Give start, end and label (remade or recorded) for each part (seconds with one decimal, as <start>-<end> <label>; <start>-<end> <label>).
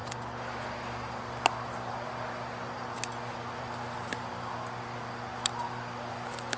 0.0-6.6 recorded